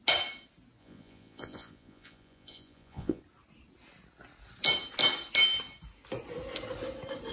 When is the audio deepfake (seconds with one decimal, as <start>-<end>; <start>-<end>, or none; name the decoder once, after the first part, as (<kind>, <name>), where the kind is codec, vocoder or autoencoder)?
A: 0.8-3.2 (vocoder, Vocos)